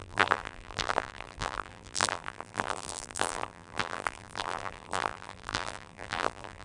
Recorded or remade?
remade